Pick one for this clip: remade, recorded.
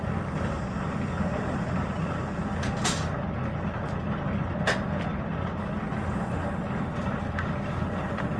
recorded